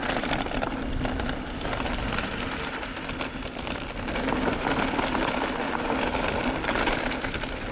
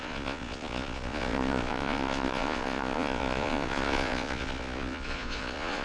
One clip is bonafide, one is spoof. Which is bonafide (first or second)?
first